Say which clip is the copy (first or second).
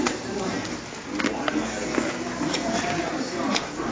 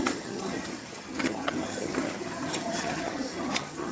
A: second